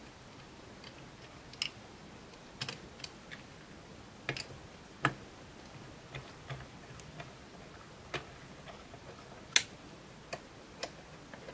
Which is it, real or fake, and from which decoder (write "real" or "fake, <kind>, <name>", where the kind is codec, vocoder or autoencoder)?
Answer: real